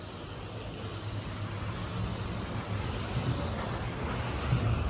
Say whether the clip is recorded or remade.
recorded